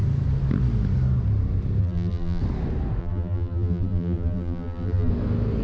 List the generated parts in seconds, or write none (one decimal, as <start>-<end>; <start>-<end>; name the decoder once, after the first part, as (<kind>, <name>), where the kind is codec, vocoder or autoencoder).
1.8-2.4 (vocoder, BigVGAN v2); 3.0-5.1